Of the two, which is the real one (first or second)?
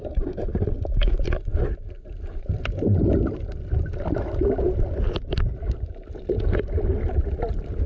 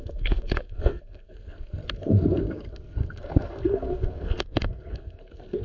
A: first